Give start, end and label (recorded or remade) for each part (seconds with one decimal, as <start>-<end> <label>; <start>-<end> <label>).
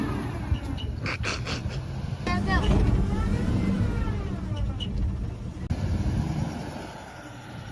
0.0-3.3 recorded; 3.3-4.3 remade; 4.3-7.7 recorded